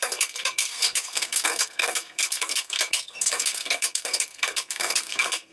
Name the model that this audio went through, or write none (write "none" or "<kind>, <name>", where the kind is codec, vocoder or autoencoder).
codec, SNAC